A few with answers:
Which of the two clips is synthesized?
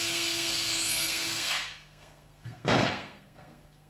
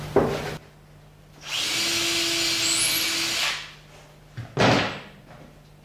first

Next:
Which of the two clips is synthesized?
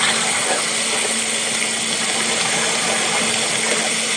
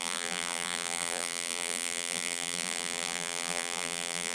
second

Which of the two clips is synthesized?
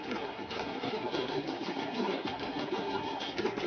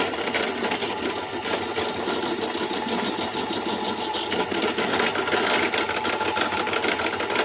first